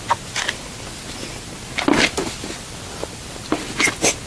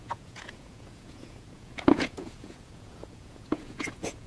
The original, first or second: first